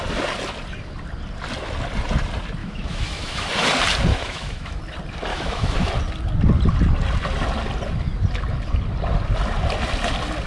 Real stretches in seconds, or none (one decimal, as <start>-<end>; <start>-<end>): 0.0-2.6; 3.5-4.1; 4.8-5.3; 5.9-10.5